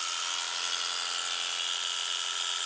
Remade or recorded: recorded